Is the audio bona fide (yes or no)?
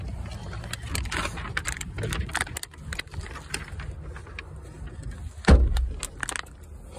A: yes